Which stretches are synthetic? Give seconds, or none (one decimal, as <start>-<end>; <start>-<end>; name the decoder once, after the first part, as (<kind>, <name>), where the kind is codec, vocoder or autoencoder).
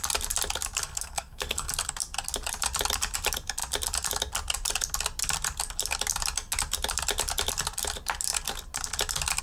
0.8-1.7 (codec, SNAC)